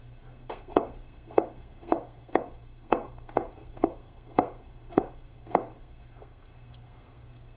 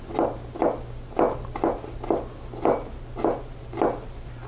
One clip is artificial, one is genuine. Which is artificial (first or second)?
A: first